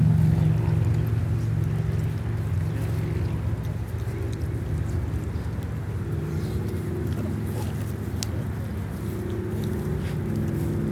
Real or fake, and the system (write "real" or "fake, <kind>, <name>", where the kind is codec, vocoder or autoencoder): real